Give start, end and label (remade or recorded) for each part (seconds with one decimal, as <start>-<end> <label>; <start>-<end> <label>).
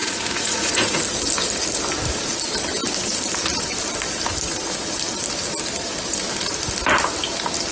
0.0-1.0 remade; 1.0-7.7 recorded